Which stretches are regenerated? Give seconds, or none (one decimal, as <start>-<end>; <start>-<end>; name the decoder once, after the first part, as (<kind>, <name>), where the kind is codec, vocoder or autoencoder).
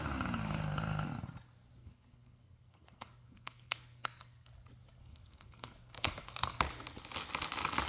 1.8-4.5 (codec, SNAC); 5.0-6.6